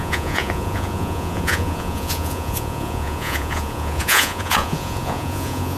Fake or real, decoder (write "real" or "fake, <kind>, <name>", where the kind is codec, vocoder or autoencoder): fake, vocoder, Vocos